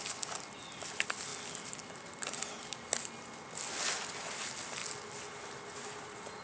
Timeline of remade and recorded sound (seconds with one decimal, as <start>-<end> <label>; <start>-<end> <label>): 0.0-6.4 recorded

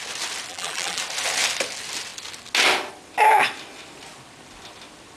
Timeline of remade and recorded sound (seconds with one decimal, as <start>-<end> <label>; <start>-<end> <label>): 0.0-0.5 recorded; 0.5-1.0 remade; 1.0-5.2 recorded

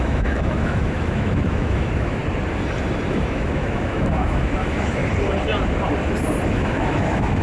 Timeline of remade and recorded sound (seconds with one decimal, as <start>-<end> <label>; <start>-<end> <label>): 0.0-2.2 remade; 2.2-3.1 recorded; 3.1-5.0 remade; 5.0-6.5 recorded; 6.5-7.4 remade

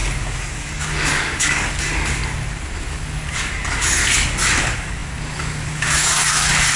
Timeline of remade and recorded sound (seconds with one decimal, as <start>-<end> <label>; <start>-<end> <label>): 0.0-2.2 remade; 2.2-2.8 recorded; 2.8-4.0 remade; 4.0-4.6 recorded; 4.6-6.8 remade